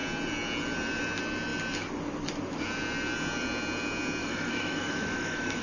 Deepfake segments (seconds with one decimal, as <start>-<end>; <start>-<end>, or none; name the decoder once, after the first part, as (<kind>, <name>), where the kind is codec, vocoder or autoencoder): 4.2-5.6 (autoencoder, DAC-VAE)